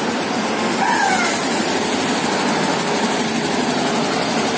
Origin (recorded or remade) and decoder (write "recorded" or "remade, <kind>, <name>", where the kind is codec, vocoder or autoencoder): recorded